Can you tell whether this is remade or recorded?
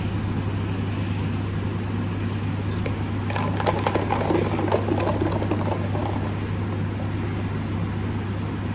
recorded